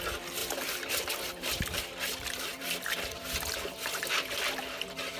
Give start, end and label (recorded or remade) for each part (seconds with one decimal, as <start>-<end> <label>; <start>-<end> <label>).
0.0-0.4 recorded; 0.4-1.6 remade; 1.6-5.2 recorded